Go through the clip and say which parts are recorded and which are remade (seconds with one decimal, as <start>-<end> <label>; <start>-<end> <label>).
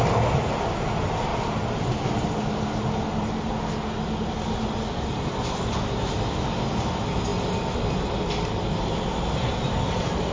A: 0.0-10.3 recorded